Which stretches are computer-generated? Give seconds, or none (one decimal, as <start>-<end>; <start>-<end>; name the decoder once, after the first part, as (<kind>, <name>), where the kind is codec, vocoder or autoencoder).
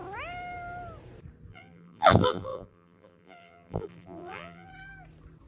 1.5-4.7 (vocoder, BigVGAN v2)